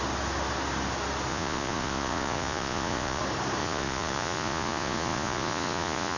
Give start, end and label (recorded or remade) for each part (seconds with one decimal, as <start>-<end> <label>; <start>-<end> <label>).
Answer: 0.0-1.3 recorded; 1.3-3.2 remade; 3.2-3.6 recorded; 3.6-6.2 remade